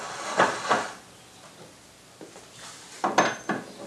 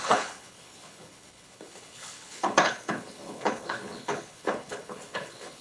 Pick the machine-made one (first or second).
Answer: second